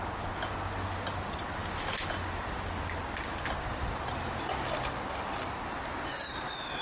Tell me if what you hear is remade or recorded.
recorded